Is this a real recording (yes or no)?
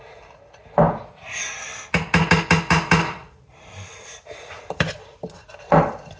yes